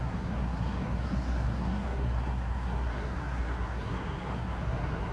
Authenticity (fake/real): fake